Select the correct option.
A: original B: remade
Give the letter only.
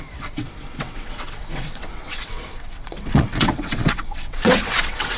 B